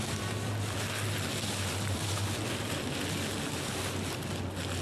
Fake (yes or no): no